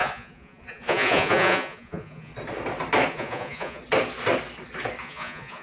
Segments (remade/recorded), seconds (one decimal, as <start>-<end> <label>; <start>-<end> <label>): 0.0-2.3 remade; 2.3-3.1 recorded; 3.1-3.8 remade; 3.8-5.0 recorded; 5.0-5.6 remade